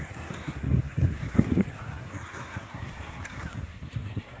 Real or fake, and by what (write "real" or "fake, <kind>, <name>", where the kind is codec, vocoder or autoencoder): fake, codec, SNAC